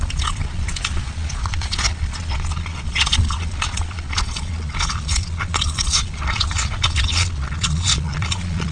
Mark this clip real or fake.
fake